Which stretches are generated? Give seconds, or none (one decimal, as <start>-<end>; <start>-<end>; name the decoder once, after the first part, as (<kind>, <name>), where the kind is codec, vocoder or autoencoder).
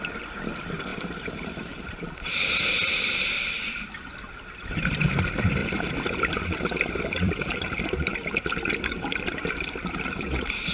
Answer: 0.0-8.1 (vocoder, BigVGAN v2); 8.7-10.7